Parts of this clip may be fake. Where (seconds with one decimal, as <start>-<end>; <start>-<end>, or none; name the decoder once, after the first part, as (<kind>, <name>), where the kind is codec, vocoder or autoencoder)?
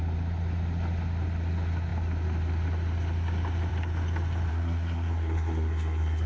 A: 4.5-6.3 (codec, SNAC)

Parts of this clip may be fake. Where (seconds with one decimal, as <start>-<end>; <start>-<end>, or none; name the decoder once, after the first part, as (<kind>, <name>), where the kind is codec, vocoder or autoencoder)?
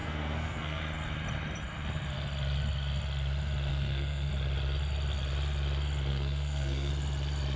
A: 0.0-0.8 (codec, SNAC); 3.7-4.3; 6.1-6.9